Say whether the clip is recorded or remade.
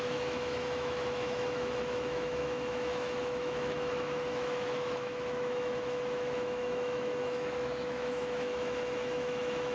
remade